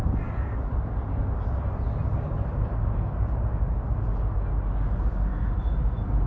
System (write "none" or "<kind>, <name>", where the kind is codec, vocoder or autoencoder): none